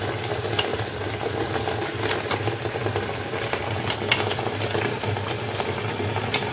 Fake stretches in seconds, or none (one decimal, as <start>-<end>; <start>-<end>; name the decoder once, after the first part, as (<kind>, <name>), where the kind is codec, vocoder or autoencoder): none

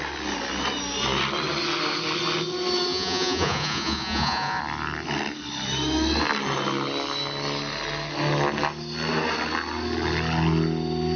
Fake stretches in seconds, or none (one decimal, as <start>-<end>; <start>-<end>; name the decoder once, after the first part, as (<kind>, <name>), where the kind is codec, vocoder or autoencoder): 2.9-4.6 (vocoder, Vocos)

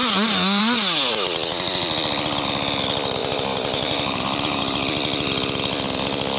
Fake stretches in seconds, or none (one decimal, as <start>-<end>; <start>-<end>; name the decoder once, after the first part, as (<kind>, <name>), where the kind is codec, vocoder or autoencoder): 3.2-4.6 (vocoder, BigVGAN v2)